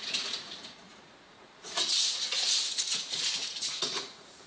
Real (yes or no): no